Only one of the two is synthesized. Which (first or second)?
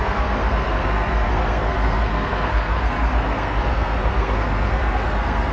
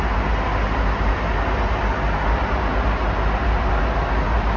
first